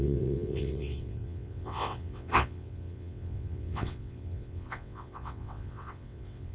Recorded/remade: remade